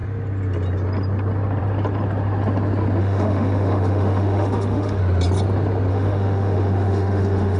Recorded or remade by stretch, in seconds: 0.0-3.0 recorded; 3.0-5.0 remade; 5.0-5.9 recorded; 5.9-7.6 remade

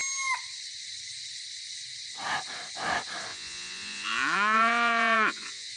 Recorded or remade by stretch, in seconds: 0.0-3.3 recorded; 3.3-5.8 remade

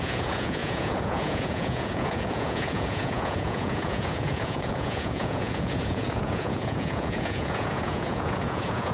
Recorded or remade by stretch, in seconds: 0.0-8.9 remade

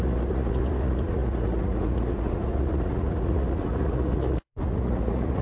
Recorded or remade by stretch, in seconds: 0.0-5.4 remade